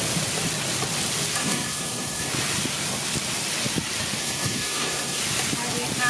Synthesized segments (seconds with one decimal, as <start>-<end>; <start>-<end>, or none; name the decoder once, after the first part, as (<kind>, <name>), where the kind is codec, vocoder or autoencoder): 1.4-2.3 (codec, SNAC); 4.2-5.2